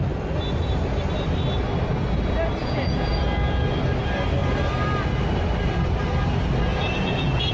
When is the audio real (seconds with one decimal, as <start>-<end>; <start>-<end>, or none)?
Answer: 0.0-2.6; 3.2-6.7